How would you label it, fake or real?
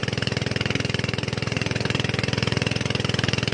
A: fake